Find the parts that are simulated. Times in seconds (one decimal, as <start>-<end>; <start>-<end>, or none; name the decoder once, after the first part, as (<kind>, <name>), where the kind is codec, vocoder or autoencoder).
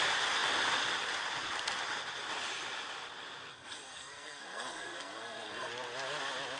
3.5-5.7 (codec, SNAC)